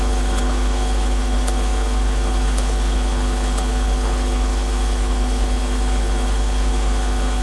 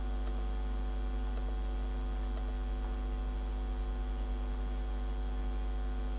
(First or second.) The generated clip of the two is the first